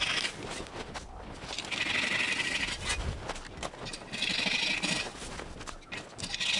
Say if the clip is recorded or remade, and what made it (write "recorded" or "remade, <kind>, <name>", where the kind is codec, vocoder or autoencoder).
recorded